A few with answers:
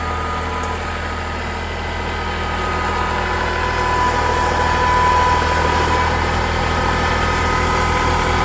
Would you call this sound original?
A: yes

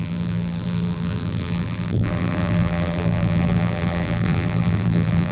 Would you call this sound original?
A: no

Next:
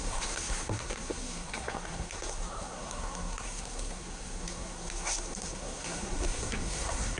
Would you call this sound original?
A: no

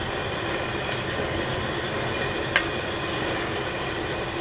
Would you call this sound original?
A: yes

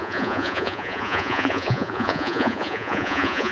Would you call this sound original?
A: no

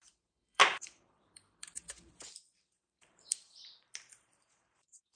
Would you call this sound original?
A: no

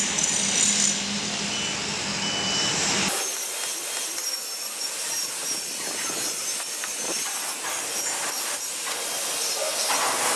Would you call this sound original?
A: yes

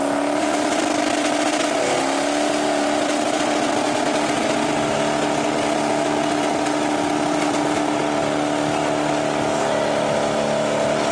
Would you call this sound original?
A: yes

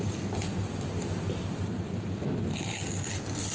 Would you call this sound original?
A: yes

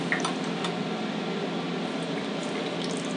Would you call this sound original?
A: yes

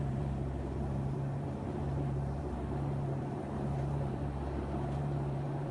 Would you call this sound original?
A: no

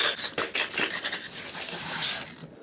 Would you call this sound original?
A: yes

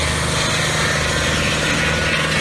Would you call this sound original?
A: yes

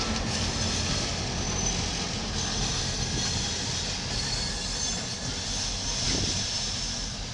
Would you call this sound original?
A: yes